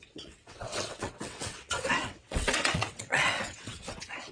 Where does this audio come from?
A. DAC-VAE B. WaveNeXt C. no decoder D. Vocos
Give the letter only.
B